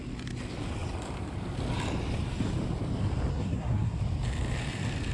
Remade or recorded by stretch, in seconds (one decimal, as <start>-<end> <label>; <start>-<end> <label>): 0.0-3.3 recorded; 3.3-4.0 remade; 4.0-5.1 recorded